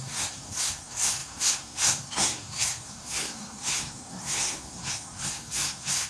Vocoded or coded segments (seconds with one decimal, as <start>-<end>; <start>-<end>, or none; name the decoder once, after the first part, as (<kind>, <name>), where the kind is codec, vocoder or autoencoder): 0.0-6.1 (codec, SNAC)